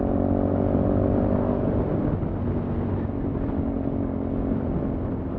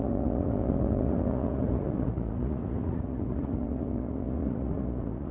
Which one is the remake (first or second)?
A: second